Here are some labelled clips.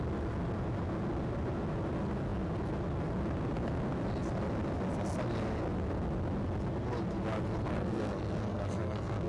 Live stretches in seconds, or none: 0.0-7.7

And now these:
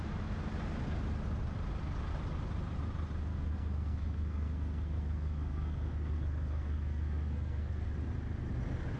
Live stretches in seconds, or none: 0.0-3.3; 7.9-9.0

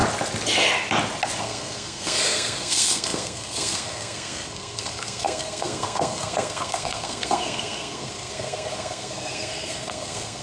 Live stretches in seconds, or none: 0.0-1.4

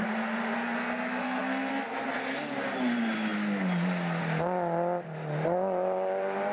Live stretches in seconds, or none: 0.0-1.2; 1.7-6.5

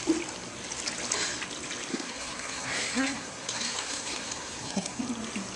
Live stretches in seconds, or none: 0.0-1.9; 5.0-5.6

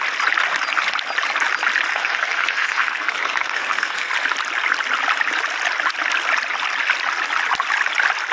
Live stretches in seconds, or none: 0.0-1.9; 4.1-8.3

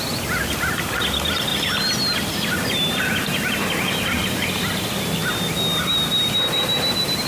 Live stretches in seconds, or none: 0.0-7.3

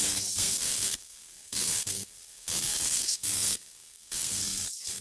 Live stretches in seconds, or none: none